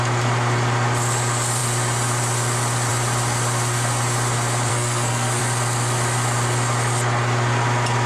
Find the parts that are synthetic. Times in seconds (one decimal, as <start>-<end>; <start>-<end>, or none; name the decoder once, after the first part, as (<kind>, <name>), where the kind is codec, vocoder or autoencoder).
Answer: 4.7-5.4 (codec, SNAC)

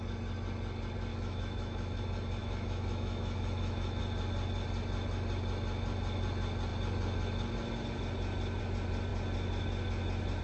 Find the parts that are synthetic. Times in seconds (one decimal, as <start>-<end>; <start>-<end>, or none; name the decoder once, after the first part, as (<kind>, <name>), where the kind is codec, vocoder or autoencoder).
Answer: 1.1-2.0 (autoencoder, DAC-VAE); 2.4-4.0

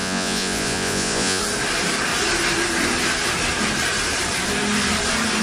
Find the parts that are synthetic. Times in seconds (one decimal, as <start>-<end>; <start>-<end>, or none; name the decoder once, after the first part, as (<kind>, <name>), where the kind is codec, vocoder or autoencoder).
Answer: 0.0-1.4 (vocoder, Vocos)

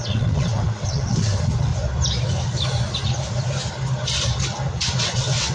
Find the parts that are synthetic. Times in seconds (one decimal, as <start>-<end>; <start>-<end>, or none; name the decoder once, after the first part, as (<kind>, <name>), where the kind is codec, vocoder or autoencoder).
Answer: 0.0-1.7 (vocoder, WaveNeXt); 5.0-5.5

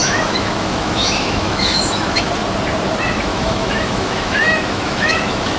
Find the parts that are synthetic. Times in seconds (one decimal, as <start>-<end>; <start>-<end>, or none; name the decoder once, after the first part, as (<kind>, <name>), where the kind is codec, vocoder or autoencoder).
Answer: 0.0-2.3 (autoencoder, DAC-VAE); 3.3-5.6

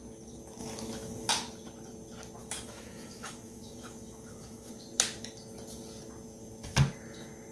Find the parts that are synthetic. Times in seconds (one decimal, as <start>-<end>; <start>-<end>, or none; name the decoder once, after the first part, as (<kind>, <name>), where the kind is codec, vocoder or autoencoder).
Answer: 0.6-1.3 (autoencoder, DAC-VAE); 2.4-4.7

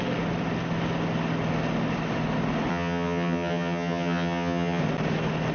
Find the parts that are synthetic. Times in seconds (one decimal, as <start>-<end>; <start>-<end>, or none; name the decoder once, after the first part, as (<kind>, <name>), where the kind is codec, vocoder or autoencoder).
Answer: 2.7-4.8 (vocoder, HiFi-GAN)

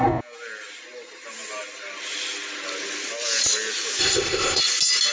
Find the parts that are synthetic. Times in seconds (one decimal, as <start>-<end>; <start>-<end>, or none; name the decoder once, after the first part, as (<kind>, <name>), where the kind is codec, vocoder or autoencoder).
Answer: 4.0-4.6 (codec, ZipCodec)